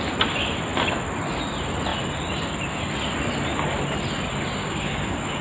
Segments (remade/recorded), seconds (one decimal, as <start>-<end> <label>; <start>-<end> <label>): 0.0-4.6 recorded; 4.6-5.4 remade